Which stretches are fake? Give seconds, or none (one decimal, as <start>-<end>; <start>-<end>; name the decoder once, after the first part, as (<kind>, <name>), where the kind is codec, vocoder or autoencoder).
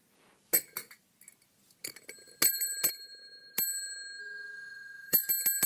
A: 4.2-5.3 (autoencoder, DAC-VAE)